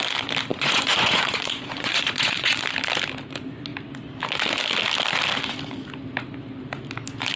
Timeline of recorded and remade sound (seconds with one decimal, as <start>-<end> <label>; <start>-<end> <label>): 0.0-0.5 recorded; 0.5-2.6 remade; 2.6-7.4 recorded